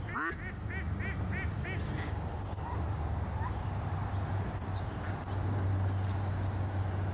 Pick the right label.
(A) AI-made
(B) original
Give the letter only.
B